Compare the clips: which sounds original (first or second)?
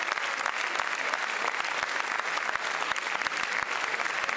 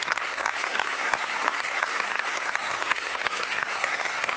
first